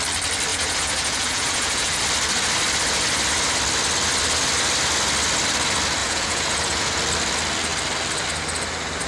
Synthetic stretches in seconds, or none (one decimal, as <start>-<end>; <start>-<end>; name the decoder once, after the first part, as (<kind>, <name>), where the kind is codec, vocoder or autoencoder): 0.5-2.0 (vocoder, Vocos); 6.0-7.0